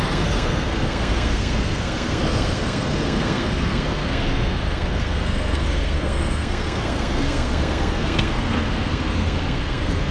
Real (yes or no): no